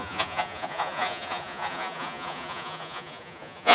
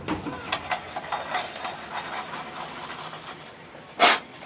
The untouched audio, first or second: second